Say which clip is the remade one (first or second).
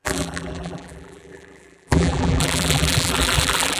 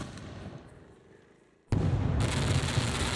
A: first